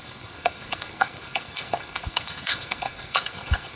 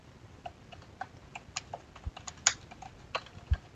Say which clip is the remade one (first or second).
first